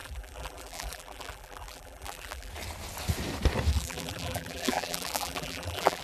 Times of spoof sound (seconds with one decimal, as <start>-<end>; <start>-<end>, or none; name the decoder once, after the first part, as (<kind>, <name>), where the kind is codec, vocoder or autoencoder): 0.0-2.5 (vocoder, BigVGAN v2); 3.7-6.0